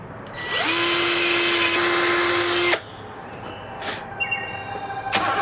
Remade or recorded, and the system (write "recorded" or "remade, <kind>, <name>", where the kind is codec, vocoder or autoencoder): recorded